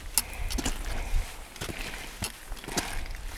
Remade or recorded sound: recorded